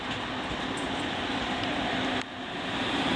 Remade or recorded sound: recorded